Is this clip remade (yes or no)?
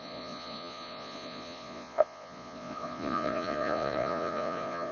yes